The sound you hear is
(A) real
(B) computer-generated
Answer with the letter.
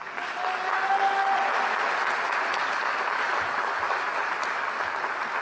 A